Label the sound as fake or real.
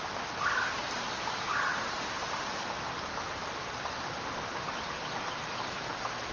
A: real